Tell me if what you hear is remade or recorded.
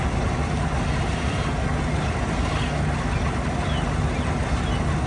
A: recorded